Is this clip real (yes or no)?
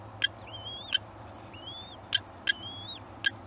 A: yes